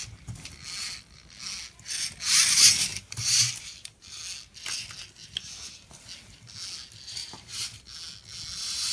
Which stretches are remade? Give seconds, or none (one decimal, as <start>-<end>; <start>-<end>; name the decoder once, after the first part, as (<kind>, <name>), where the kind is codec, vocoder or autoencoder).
2.9-4.2 (vocoder, BigVGAN v2); 5.2-5.9; 7.2-7.8